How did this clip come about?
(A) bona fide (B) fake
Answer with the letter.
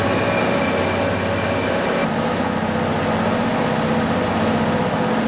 A